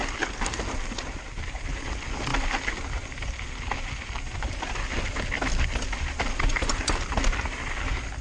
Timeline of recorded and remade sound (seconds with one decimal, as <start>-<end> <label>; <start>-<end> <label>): 0.0-8.2 recorded